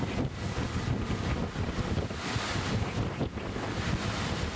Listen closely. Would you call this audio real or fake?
real